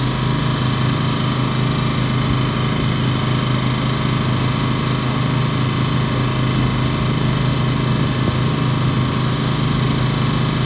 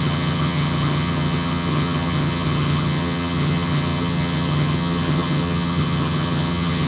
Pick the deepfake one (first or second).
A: second